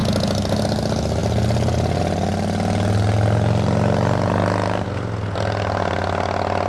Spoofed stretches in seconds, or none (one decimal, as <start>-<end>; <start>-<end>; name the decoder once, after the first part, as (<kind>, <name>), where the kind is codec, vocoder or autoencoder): none